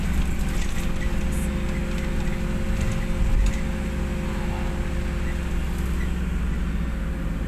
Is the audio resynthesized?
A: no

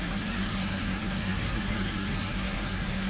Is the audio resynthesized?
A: yes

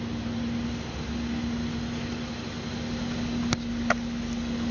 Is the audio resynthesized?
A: no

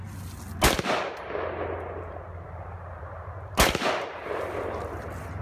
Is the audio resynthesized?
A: no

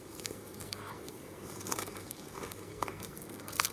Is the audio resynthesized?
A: yes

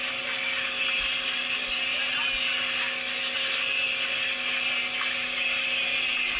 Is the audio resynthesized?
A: no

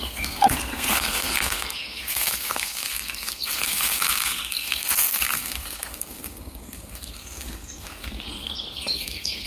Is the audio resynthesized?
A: yes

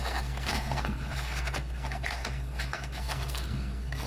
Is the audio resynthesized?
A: yes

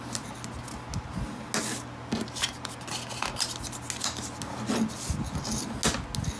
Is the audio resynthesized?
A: no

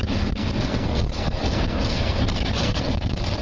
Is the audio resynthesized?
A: yes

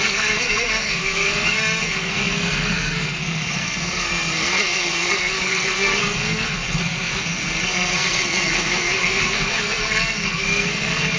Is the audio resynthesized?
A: yes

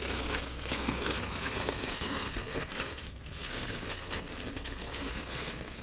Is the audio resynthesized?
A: yes